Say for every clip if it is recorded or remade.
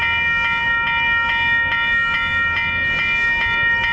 recorded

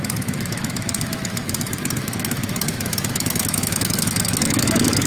remade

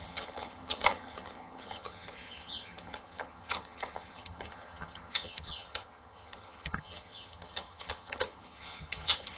remade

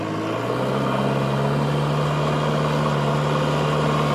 recorded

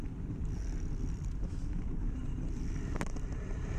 recorded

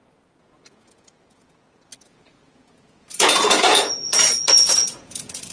remade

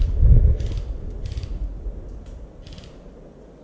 recorded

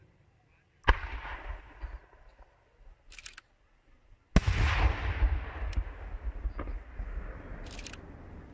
recorded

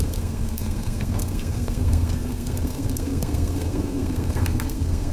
remade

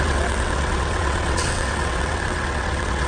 remade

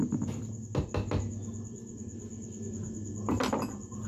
recorded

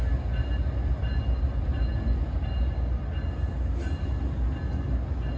recorded